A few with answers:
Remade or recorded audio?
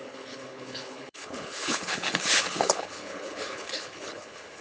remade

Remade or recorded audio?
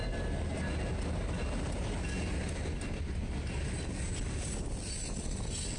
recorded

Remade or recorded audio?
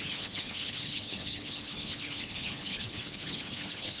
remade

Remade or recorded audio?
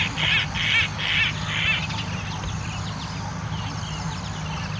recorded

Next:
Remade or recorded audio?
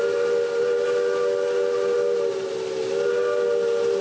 recorded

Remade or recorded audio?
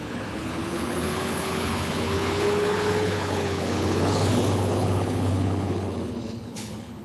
remade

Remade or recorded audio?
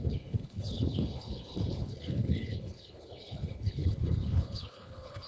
remade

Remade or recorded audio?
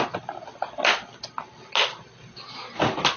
recorded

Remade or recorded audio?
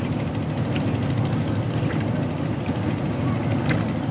recorded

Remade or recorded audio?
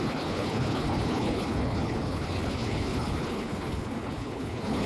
remade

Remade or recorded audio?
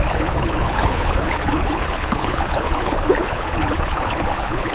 remade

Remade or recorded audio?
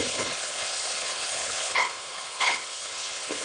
remade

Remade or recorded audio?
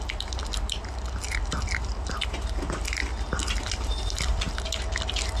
recorded